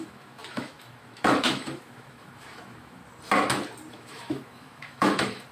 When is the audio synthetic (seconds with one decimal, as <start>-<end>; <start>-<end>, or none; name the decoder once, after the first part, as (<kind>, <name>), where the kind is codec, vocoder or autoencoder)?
0.0-3.0 (autoencoder, DAC-VAE); 3.9-5.5